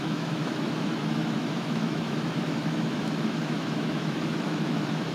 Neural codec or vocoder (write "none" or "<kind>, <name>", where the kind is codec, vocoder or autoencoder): autoencoder, DAC-VAE